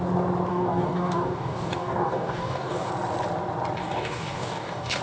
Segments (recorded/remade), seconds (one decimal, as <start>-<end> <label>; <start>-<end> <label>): 0.0-0.5 recorded; 0.5-2.9 remade; 2.9-3.8 recorded; 3.8-5.0 remade